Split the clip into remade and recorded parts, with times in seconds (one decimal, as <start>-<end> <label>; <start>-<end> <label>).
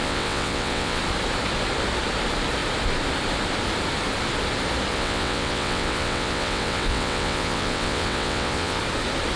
0.0-1.0 remade; 1.0-4.9 recorded; 4.9-8.8 remade; 8.8-9.4 recorded